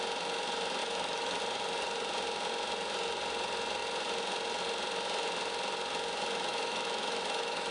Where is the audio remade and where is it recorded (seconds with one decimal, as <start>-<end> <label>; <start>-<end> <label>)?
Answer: 0.0-0.8 recorded; 0.8-1.4 remade; 1.4-6.5 recorded; 6.5-7.7 remade

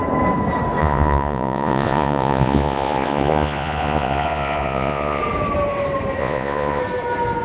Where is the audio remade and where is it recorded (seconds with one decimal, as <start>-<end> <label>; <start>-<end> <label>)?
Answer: 0.0-0.8 recorded; 0.8-5.2 remade; 5.2-6.2 recorded; 6.2-6.8 remade; 6.8-7.4 recorded

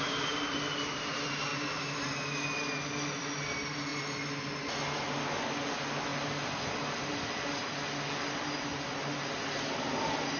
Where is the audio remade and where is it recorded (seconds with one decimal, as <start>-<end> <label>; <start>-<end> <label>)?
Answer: 0.0-10.4 recorded

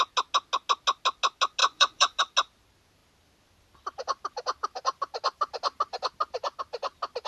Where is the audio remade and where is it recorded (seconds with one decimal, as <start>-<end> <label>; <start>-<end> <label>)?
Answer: 0.0-1.6 recorded; 1.6-2.2 remade; 2.2-7.3 recorded

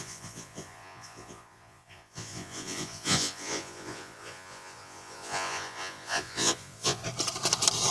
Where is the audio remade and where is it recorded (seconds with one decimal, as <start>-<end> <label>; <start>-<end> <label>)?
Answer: 0.0-7.0 remade; 7.0-7.9 recorded

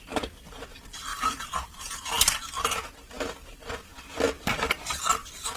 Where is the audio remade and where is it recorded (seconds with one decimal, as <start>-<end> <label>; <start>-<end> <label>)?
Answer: 0.0-1.1 recorded; 1.1-1.8 remade; 1.8-3.9 recorded; 3.9-4.9 remade; 4.9-5.6 recorded

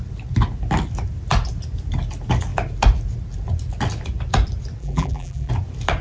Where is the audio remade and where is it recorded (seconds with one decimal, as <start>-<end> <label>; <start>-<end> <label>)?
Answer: 0.0-4.8 recorded; 4.8-5.5 remade; 5.5-6.0 recorded

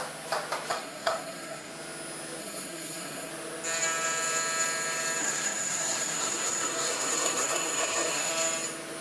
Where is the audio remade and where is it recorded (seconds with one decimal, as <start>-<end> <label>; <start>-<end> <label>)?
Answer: 0.0-0.7 recorded; 0.7-1.7 remade; 1.7-2.4 recorded; 2.4-3.3 remade; 3.3-5.2 recorded; 5.2-8.3 remade; 8.3-9.0 recorded